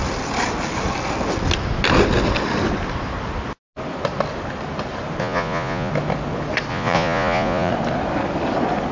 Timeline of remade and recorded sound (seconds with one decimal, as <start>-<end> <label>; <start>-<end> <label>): 0.0-5.2 recorded; 5.2-5.9 remade; 5.9-6.7 recorded; 6.7-7.7 remade; 7.7-8.9 recorded

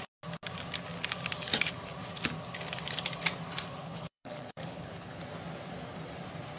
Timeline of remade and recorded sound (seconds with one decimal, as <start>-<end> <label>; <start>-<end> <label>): 0.0-3.8 recorded; 3.8-5.2 remade; 5.2-6.6 recorded

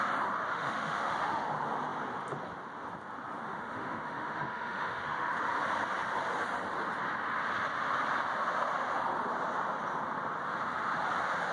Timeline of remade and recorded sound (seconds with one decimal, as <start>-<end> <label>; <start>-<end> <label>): 0.0-0.5 recorded; 0.5-1.5 remade; 1.5-3.4 recorded; 3.4-5.3 remade; 5.3-11.5 recorded

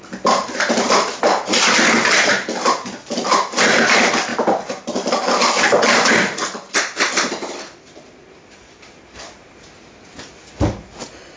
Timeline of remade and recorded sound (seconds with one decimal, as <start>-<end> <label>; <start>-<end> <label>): 0.0-11.4 recorded

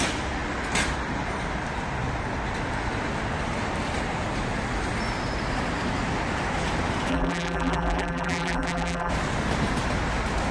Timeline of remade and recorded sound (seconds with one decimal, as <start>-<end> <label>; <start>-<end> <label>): 0.0-7.1 recorded; 7.1-9.1 remade; 9.1-10.5 recorded

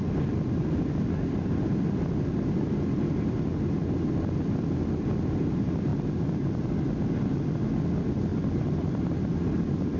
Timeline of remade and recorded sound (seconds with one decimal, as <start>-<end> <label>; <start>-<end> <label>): 0.0-8.3 recorded; 8.3-9.4 remade; 9.4-10.0 recorded

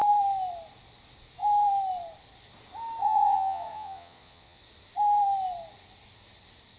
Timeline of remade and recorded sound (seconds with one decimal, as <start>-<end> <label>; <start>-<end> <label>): 0.0-3.0 recorded; 3.0-4.6 remade; 4.6-6.8 recorded